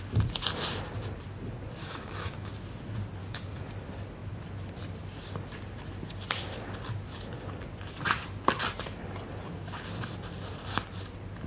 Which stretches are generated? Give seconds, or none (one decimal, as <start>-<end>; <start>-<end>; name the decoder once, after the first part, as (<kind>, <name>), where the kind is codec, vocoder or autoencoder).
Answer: 1.8-2.5 (autoencoder, DAC-VAE); 3.2-3.7